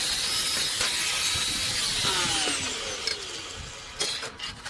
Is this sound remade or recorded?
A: recorded